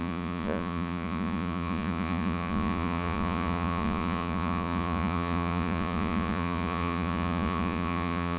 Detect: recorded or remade remade